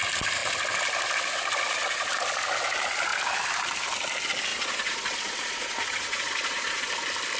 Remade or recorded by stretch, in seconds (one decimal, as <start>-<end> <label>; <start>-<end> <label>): 0.0-4.5 recorded; 4.5-6.9 remade; 6.9-7.4 recorded